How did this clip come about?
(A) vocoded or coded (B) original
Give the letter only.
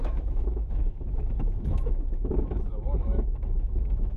A